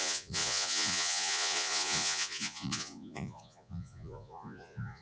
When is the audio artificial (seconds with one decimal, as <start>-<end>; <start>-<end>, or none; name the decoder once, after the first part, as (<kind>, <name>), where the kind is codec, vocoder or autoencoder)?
0.0-5.0 (vocoder, Vocos)